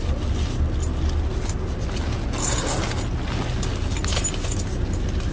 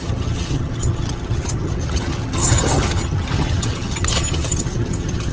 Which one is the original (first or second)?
first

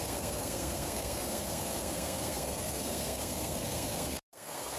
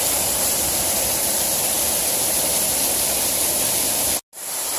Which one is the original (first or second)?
second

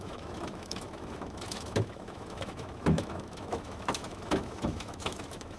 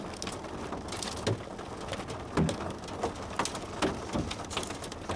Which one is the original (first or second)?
second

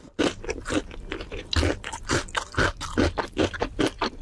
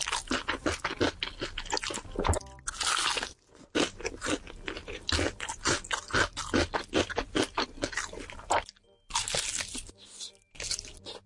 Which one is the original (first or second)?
second